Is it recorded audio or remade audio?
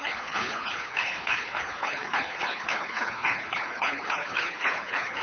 remade